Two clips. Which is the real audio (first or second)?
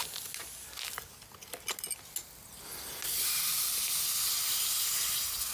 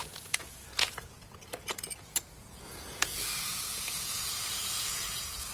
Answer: first